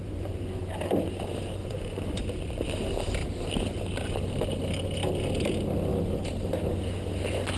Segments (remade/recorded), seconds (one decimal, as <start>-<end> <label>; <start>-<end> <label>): 0.0-0.6 remade; 0.6-1.6 recorded; 1.6-2.2 remade; 2.2-7.6 recorded